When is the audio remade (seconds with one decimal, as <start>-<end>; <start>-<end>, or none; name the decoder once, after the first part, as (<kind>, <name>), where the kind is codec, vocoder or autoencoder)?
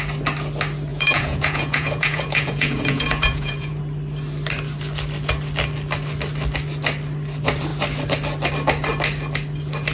0.9-3.8 (vocoder, Vocos)